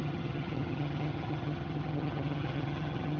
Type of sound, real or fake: fake